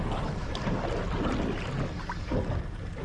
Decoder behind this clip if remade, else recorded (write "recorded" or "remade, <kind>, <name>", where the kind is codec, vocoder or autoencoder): recorded